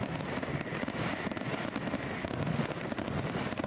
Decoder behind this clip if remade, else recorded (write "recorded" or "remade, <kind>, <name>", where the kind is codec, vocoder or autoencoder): remade, vocoder, BigVGAN v2